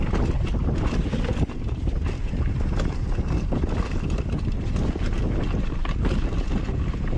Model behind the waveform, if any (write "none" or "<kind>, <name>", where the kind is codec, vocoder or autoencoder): none